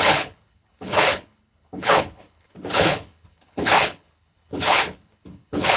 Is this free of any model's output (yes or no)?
no